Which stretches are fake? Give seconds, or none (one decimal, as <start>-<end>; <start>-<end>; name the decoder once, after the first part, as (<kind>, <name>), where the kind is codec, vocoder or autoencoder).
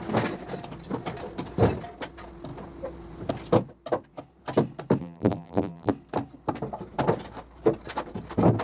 5.0-5.9 (vocoder, BigVGAN v2)